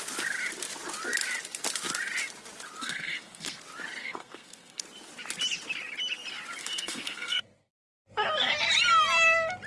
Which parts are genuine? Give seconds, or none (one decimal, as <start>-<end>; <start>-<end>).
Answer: 0.0-2.8; 3.6-4.0; 4.8-6.6; 7.8-9.7